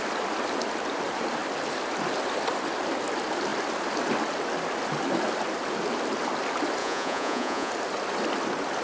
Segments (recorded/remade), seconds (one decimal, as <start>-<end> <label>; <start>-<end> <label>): 0.0-6.8 recorded; 6.8-7.7 remade; 7.7-8.8 recorded